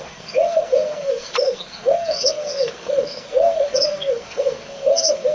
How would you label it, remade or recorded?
remade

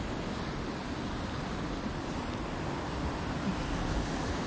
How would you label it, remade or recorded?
recorded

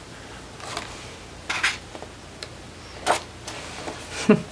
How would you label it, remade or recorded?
recorded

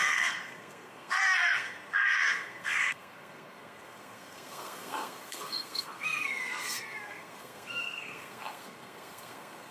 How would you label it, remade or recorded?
remade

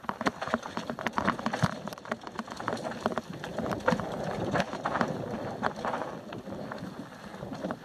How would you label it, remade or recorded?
recorded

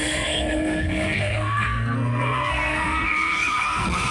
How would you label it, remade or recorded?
remade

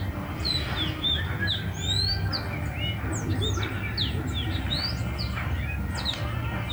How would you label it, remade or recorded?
recorded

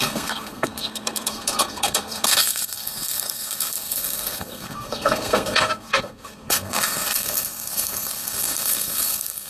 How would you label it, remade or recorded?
remade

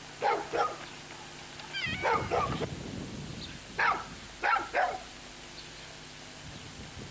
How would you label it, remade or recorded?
recorded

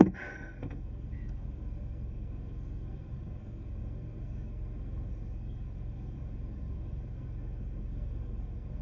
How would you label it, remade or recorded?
remade